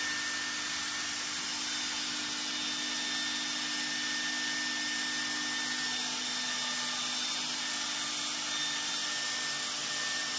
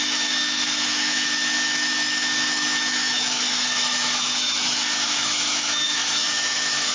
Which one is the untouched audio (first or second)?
first